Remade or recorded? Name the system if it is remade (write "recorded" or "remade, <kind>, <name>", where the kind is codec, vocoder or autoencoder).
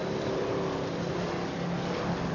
recorded